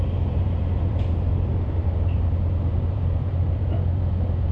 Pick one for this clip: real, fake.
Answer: fake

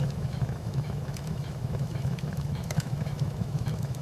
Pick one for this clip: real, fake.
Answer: fake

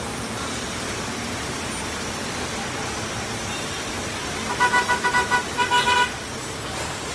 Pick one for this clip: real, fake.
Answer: real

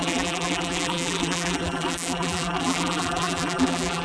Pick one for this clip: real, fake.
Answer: fake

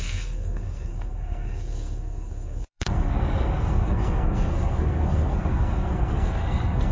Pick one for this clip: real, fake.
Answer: fake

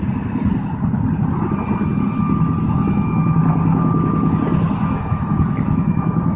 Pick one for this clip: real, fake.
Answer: real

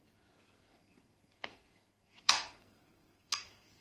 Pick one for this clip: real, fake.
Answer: fake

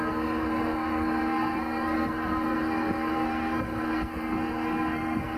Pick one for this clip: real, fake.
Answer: fake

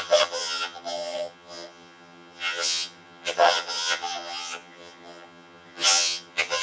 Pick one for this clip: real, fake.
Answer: fake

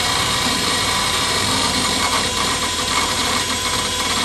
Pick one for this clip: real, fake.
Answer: fake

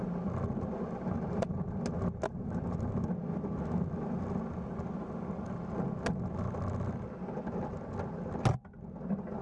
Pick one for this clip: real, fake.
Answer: real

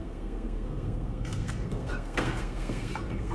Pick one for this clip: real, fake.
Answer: fake